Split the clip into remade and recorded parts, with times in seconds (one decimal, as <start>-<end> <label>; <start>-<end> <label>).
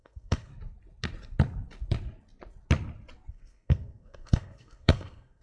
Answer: 0.0-0.5 remade; 0.5-3.3 recorded; 3.3-5.4 remade